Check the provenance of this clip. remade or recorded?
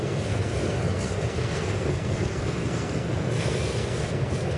remade